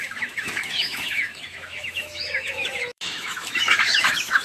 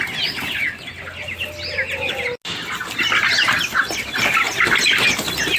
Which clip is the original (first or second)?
second